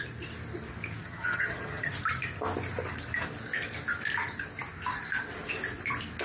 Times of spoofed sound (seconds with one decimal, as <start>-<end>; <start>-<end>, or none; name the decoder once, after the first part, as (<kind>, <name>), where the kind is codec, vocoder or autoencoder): 1.0-1.9 (vocoder, HiFi-GAN)